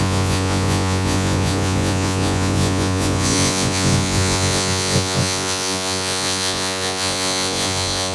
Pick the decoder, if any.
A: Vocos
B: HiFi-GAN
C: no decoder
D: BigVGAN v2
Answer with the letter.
A